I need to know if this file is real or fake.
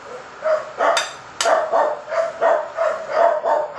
real